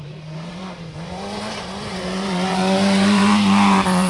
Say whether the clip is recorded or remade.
remade